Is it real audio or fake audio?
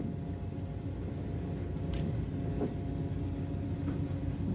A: real